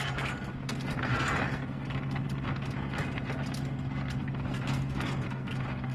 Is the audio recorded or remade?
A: remade